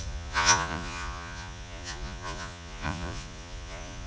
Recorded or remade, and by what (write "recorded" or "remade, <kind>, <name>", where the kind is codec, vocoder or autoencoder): remade, vocoder, Vocos